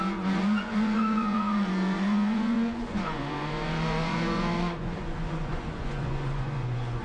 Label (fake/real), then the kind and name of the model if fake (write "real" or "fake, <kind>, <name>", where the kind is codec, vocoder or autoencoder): fake, vocoder, Vocos